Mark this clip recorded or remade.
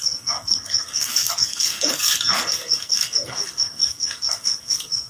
remade